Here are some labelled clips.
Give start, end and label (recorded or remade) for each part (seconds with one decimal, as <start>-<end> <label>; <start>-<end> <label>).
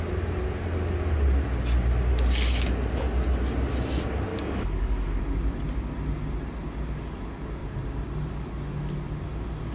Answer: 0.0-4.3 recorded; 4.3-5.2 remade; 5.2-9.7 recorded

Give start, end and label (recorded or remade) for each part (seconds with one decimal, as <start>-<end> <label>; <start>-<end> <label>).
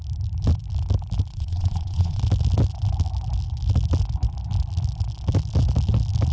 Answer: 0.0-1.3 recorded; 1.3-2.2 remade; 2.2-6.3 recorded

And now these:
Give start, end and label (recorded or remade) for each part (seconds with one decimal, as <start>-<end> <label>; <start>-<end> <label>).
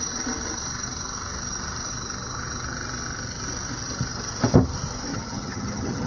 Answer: 0.0-5.1 recorded; 5.1-6.1 remade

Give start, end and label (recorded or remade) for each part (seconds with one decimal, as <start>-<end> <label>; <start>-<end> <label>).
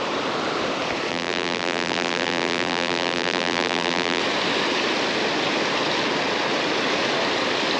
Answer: 0.0-1.1 recorded; 1.1-4.2 remade; 4.2-7.8 recorded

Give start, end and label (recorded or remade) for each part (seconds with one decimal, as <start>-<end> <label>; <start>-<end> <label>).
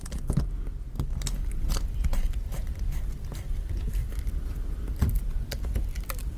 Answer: 0.0-4.0 recorded; 4.0-4.5 remade; 4.5-6.4 recorded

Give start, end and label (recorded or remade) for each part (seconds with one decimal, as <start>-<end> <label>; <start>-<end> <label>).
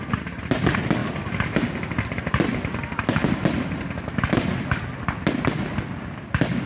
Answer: 0.0-6.7 recorded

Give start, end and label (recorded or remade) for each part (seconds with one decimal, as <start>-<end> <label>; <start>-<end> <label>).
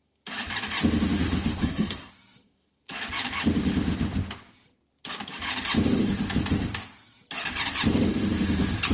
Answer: 0.0-1.6 recorded; 1.6-2.1 remade; 2.1-8.9 recorded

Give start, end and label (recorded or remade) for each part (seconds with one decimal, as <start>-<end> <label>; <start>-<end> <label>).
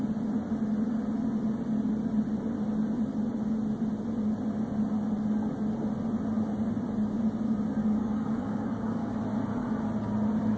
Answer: 0.0-7.8 recorded; 7.8-9.1 remade; 9.1-10.6 recorded